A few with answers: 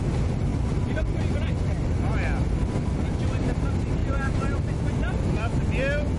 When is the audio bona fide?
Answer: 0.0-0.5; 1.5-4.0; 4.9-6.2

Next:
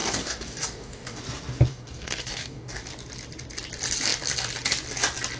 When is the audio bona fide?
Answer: 1.2-1.7; 2.8-5.4

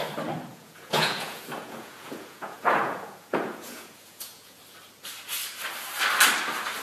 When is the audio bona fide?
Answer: 0.0-0.5; 4.6-6.8